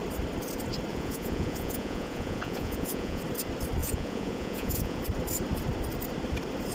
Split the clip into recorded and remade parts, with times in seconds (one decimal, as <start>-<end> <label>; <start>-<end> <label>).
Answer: 0.0-0.9 recorded; 0.9-3.2 remade; 3.2-3.8 recorded; 3.8-5.0 remade; 5.0-6.7 recorded